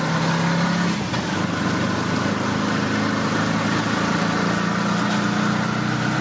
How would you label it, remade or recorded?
recorded